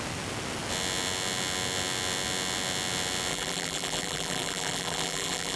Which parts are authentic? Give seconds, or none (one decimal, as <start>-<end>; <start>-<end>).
0.0-3.3